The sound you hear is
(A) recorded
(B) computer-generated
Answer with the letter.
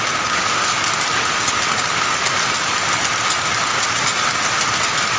A